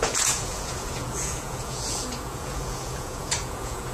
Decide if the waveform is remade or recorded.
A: remade